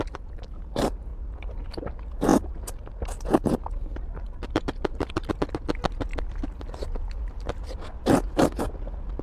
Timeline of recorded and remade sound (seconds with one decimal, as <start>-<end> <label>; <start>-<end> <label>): 0.0-2.3 recorded; 2.3-5.3 remade; 5.3-9.2 recorded